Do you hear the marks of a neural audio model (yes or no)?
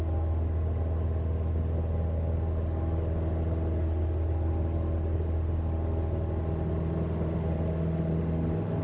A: no